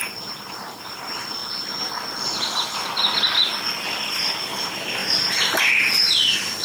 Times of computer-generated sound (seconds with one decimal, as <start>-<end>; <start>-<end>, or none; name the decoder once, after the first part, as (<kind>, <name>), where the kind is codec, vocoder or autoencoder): 0.0-1.4 (vocoder, BigVGAN v2); 4.1-6.6